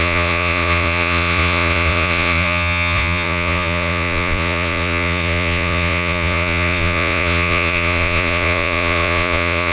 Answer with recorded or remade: remade